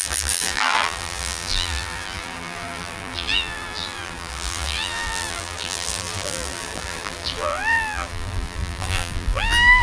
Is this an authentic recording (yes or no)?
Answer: no